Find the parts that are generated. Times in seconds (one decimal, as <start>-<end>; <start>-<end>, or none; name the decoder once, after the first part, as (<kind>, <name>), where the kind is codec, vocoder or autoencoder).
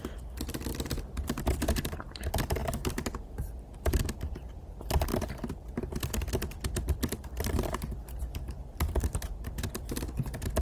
0.7-1.4 (vocoder, BigVGAN v2); 2.6-3.6; 5.1-10.6